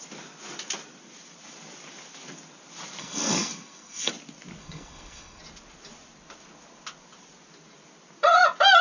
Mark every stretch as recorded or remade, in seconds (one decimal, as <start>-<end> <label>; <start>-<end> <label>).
0.0-3.0 recorded; 3.0-4.1 remade; 4.1-4.6 recorded; 4.6-5.4 remade; 5.4-8.8 recorded